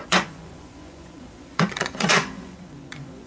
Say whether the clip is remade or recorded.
remade